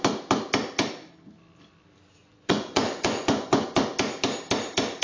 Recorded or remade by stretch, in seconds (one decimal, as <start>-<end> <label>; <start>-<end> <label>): 0.0-2.2 recorded; 2.2-3.8 remade; 3.8-5.0 recorded